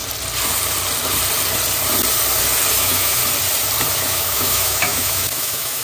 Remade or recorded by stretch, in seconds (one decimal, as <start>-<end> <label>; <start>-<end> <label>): 0.0-2.7 recorded; 2.7-3.2 remade; 3.2-3.9 recorded; 3.9-5.8 remade